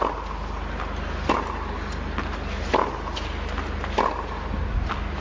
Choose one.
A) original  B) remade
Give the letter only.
A